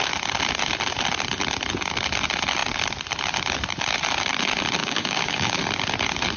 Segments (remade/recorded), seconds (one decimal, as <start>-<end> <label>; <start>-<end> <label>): 0.0-4.8 recorded; 4.8-5.6 remade; 5.6-6.4 recorded